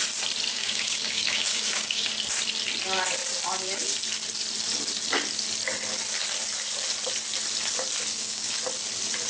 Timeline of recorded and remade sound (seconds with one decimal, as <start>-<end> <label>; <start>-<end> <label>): 0.0-0.5 recorded; 0.5-2.1 remade; 2.1-8.1 recorded; 8.1-8.6 remade; 8.6-9.3 recorded